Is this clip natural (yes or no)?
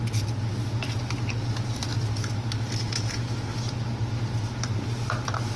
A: yes